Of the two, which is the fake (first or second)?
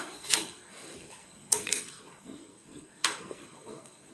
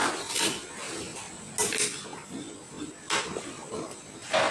first